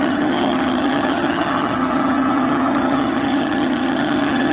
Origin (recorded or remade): remade